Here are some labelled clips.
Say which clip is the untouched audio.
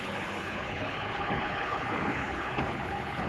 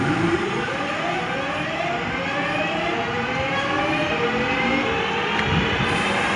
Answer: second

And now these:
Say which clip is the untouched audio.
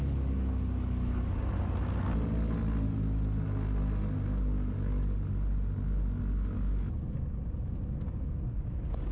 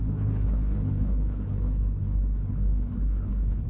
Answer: first